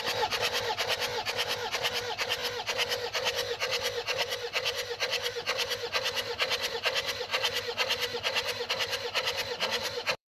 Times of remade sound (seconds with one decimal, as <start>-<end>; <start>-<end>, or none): 0.0-1.1; 1.7-2.4; 6.7-7.3; 8.7-10.3